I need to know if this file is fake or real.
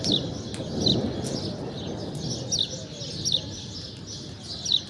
real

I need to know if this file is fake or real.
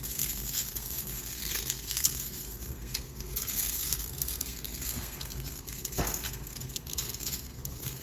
fake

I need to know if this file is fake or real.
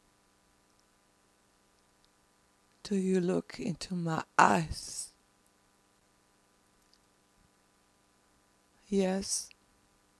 real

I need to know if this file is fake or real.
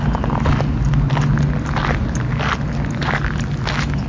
real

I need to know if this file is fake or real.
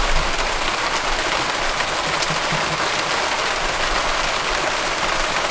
real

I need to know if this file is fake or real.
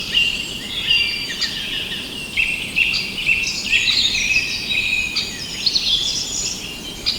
real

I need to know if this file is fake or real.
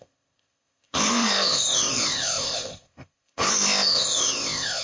fake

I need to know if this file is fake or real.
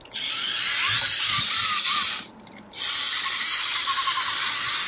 real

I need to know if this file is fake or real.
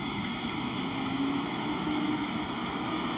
fake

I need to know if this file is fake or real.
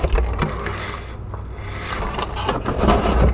real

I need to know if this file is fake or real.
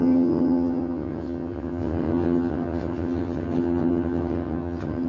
fake